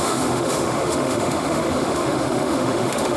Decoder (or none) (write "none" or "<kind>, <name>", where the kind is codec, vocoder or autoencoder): autoencoder, DAC-VAE